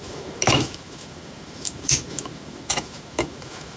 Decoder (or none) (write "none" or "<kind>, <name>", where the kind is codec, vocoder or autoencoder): autoencoder, DAC-VAE